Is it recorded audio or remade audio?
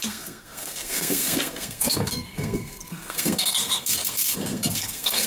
remade